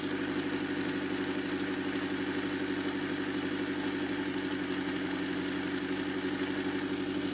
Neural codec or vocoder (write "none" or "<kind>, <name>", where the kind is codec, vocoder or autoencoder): none